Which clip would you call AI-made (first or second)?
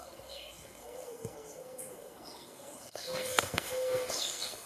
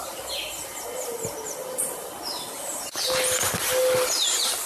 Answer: first